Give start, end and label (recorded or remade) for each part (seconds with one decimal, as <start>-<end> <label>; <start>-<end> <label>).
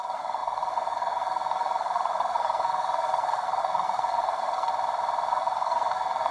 0.0-4.7 remade; 4.7-5.3 recorded; 5.3-6.3 remade